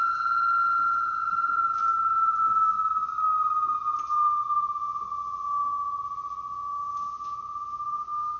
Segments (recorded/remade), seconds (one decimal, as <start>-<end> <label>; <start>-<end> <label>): 0.0-8.4 recorded